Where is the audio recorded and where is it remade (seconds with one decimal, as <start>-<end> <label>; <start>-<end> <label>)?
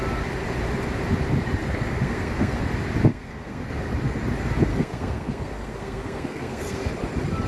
0.0-1.6 recorded; 1.6-2.6 remade; 2.6-3.1 recorded; 3.1-3.7 remade; 3.7-4.7 recorded; 4.7-6.9 remade; 6.9-7.5 recorded